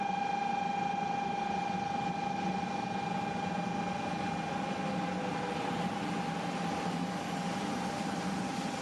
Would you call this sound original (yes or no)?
yes